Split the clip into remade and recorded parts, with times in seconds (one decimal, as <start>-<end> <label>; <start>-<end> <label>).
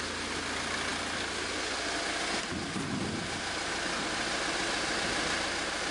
0.0-5.9 recorded